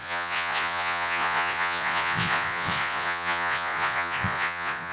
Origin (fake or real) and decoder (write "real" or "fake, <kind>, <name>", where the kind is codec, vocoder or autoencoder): fake, vocoder, Vocos